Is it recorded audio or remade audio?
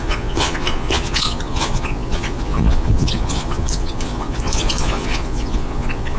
remade